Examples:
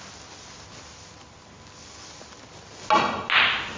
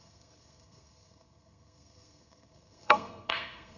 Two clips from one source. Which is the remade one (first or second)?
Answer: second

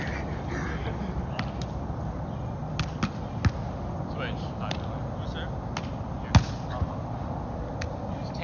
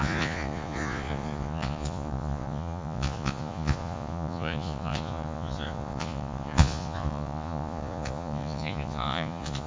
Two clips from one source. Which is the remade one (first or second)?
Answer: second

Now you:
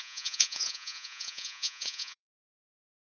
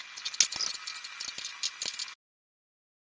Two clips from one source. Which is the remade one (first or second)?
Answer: first